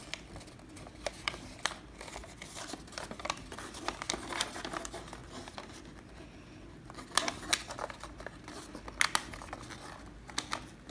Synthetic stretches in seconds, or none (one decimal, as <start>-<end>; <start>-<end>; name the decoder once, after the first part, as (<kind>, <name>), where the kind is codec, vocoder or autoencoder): none